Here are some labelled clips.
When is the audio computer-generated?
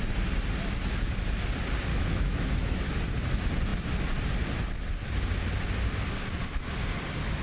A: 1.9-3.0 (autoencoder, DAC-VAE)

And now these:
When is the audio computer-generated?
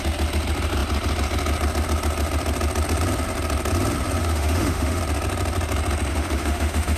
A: 4.2-5.0 (autoencoder, DAC-VAE); 6.1-7.0